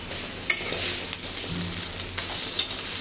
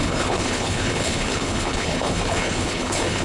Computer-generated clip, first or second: second